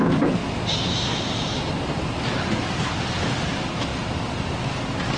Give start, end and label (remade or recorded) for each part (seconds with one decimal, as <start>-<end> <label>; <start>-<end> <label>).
0.0-5.2 recorded